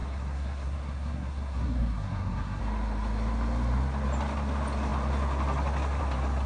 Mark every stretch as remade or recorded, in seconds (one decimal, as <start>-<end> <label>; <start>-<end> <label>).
0.0-2.6 remade; 2.6-6.5 recorded